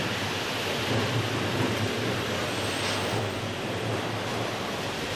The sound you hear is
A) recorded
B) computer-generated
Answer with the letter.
A